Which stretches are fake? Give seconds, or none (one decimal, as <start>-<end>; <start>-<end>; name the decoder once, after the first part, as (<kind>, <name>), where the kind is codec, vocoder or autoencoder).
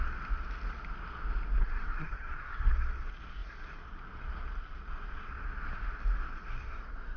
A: 1.6-2.7 (codec, SNAC); 6.5-7.2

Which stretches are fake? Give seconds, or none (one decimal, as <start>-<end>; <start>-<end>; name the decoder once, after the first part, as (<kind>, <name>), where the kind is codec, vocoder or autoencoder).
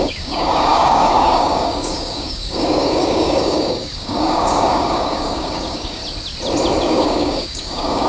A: 0.0-6.0 (codec, DAC); 6.8-8.1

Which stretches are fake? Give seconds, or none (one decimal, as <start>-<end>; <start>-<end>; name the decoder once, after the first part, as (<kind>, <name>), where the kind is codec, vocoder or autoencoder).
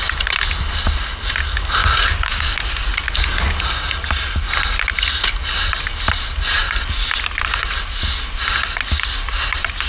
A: 1.8-2.5 (codec, DAC)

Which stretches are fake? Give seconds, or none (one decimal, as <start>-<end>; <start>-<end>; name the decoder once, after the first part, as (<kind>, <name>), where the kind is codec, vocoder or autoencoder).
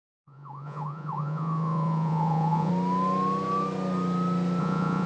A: 0.0-2.7 (vocoder, Vocos); 4.6-5.1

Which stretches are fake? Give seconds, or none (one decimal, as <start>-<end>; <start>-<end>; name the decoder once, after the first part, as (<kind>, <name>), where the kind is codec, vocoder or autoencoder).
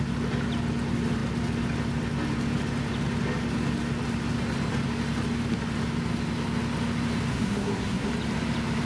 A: 7.3-8.1 (codec, SNAC)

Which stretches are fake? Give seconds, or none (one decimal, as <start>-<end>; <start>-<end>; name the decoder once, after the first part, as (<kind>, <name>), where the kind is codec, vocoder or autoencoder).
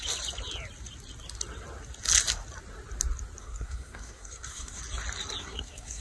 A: 3.4-4.8 (codec, SNAC); 5.4-6.0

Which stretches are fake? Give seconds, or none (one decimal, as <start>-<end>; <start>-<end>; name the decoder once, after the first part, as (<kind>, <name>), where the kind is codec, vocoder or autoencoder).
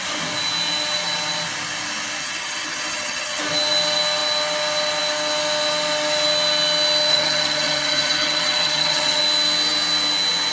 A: 2.2-3.4 (vocoder, HiFi-GAN); 7.1-9.2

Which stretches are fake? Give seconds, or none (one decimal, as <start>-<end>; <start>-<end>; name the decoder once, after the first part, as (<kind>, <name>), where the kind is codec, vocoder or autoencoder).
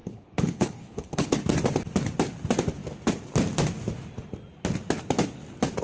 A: 0.0-1.4 (codec, HILCodec)